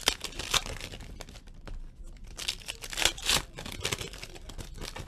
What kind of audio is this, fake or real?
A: real